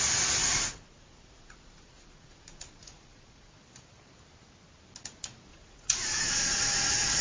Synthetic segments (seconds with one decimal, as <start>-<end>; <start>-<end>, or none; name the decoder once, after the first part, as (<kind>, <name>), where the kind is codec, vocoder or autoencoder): 0.4-3.5 (vocoder, Vocos); 5.5-7.2